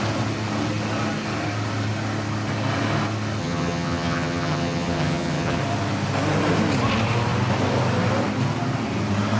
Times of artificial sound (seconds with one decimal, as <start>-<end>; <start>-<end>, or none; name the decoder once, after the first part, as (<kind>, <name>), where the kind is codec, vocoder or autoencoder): 3.4-5.6 (vocoder, HiFi-GAN)

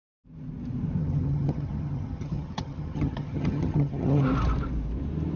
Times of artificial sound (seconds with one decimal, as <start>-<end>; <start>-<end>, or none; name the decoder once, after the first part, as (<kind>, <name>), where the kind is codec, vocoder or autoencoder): 1.0-4.2 (vocoder, HiFi-GAN)